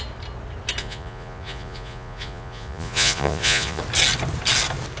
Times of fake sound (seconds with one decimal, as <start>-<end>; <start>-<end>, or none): 0.8-3.8